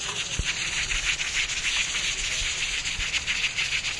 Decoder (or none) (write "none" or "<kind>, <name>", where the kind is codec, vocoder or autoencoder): none